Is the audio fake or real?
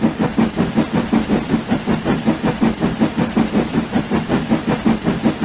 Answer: real